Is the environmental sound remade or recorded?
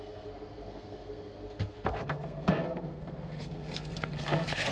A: remade